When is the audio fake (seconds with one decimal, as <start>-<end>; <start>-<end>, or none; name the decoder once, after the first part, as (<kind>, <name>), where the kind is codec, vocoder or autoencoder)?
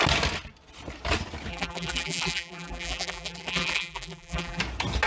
1.5-4.6 (vocoder, BigVGAN v2)